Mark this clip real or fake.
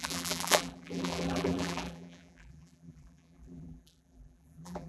fake